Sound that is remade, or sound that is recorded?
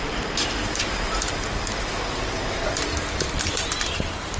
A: recorded